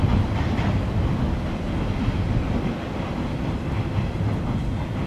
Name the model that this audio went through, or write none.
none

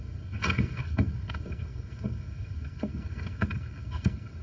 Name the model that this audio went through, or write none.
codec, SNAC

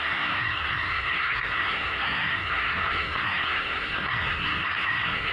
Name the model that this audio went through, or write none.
codec, SNAC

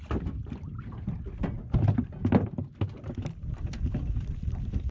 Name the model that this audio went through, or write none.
none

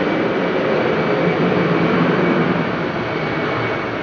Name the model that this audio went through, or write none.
none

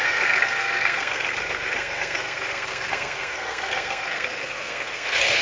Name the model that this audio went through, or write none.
codec, SNAC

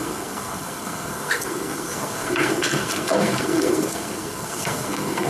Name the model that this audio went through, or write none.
codec, SNAC